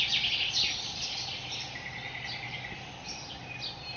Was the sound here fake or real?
real